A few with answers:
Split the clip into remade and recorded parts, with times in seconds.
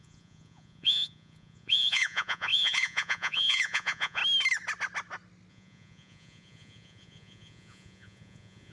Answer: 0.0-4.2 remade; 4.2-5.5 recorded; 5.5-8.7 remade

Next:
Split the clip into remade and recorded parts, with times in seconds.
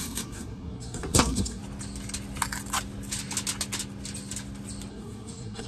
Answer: 0.0-1.6 remade; 1.6-4.9 recorded; 4.9-5.7 remade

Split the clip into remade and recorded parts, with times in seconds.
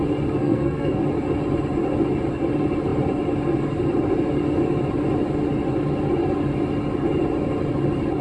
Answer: 0.0-0.4 recorded; 0.4-1.0 remade; 1.0-8.2 recorded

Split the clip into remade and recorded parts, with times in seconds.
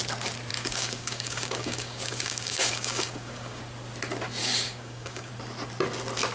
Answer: 0.0-0.5 recorded; 0.5-3.6 remade; 3.6-4.4 recorded; 4.4-5.3 remade; 5.3-6.3 recorded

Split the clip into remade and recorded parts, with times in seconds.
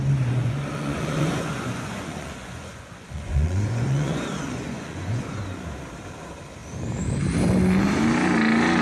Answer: 0.0-0.4 recorded; 0.4-5.4 remade; 5.4-8.8 recorded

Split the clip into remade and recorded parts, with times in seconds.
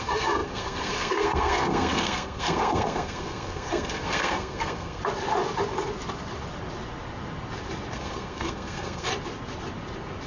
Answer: 0.0-5.0 remade; 5.0-7.9 recorded; 7.9-9.1 remade; 9.1-10.3 recorded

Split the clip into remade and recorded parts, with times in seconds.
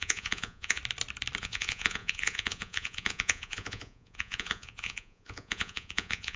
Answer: 0.0-0.8 remade; 0.8-1.4 recorded; 1.4-6.4 remade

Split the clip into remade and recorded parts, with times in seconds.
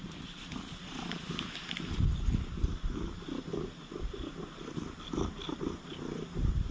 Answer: 0.0-1.4 remade; 1.4-6.7 recorded